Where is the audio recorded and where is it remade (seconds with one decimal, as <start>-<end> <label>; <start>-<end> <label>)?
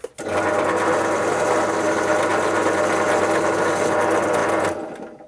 0.0-5.3 recorded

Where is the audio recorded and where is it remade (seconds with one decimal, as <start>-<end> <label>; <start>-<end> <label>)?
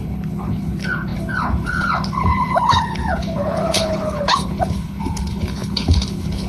0.0-6.5 remade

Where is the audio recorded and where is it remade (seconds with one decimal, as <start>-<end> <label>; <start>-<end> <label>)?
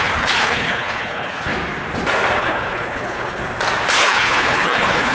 0.0-1.5 remade; 1.5-2.4 recorded; 2.4-3.4 remade; 3.4-4.0 recorded; 4.0-5.1 remade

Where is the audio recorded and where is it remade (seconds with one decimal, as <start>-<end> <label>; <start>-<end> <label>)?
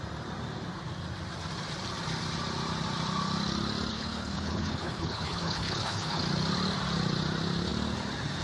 0.0-3.9 recorded; 3.9-6.2 remade; 6.2-8.4 recorded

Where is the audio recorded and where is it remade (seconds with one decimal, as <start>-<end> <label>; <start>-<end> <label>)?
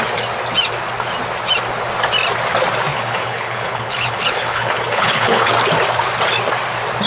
0.0-2.9 recorded; 2.9-5.5 remade; 5.5-7.1 recorded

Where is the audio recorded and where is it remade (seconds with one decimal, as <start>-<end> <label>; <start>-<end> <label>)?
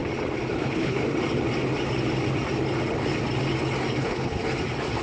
0.0-0.6 recorded; 0.6-1.0 remade; 1.0-4.0 recorded; 4.0-4.4 remade; 4.4-5.0 recorded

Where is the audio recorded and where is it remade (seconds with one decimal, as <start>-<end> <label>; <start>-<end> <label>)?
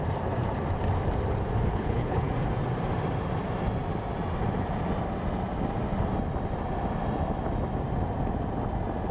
0.0-1.7 recorded; 1.7-2.3 remade; 2.3-9.1 recorded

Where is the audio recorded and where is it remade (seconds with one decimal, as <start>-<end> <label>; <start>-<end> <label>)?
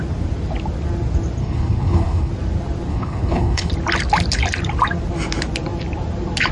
0.0-1.4 recorded; 1.4-2.3 remade; 2.3-2.9 recorded; 2.9-3.7 remade; 3.7-6.5 recorded